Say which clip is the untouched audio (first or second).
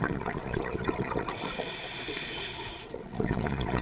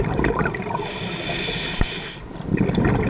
second